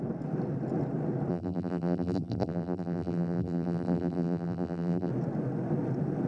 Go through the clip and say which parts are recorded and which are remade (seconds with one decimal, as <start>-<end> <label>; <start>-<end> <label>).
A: 0.0-1.3 recorded; 1.3-5.1 remade; 5.1-6.3 recorded